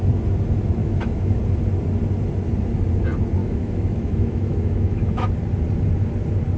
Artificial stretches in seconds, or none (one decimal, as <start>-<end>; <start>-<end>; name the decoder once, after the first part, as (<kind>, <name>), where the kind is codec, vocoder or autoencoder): 0.8-1.4 (autoencoder, DAC-VAE); 3.4-5.3